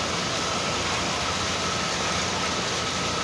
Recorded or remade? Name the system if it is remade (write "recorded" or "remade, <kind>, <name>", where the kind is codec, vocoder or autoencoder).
recorded